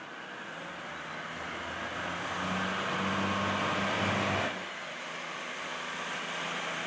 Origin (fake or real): real